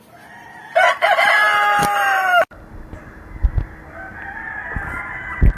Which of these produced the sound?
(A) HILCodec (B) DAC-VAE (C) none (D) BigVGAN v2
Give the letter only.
C